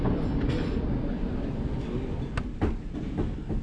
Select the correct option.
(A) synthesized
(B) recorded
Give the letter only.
B